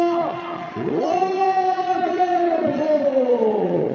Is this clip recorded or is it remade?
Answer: remade